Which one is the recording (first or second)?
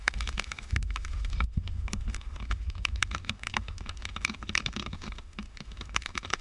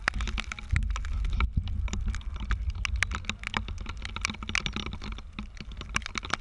second